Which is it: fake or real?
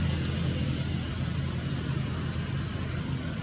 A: real